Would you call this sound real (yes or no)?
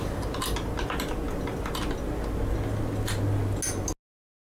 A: yes